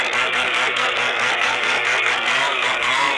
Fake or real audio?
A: fake